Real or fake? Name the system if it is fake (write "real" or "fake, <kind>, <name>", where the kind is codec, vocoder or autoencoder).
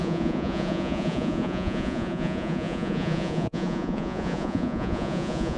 fake, vocoder, Vocos